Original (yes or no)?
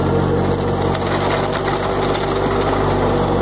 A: yes